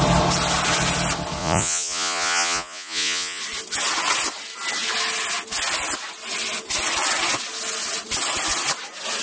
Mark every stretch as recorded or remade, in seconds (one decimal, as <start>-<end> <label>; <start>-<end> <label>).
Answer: 0.0-1.4 recorded; 1.4-3.4 remade; 3.4-9.2 recorded